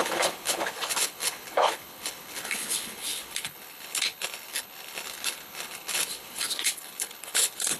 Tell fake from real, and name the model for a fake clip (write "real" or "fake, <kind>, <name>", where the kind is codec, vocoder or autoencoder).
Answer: fake, codec, HILCodec